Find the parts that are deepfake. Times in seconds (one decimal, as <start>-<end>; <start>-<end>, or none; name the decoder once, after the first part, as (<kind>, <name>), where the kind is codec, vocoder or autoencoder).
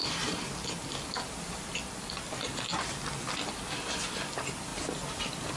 none